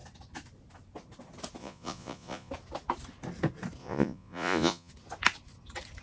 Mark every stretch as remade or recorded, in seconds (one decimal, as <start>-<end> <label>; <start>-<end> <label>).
0.0-1.6 recorded; 1.6-2.5 remade; 2.5-3.8 recorded; 3.8-4.9 remade; 4.9-6.0 recorded